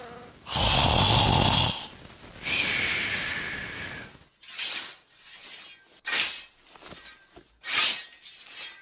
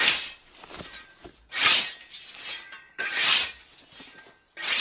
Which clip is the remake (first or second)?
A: second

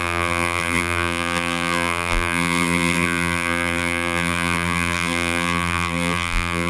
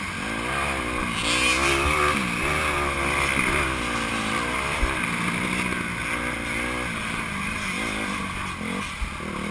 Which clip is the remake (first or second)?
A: first